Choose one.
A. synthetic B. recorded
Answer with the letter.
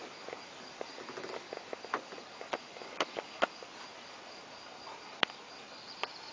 B